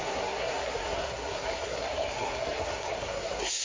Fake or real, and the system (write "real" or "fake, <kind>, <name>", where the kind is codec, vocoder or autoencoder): fake, codec, SNAC